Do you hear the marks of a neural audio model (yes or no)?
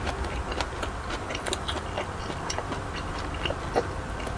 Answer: no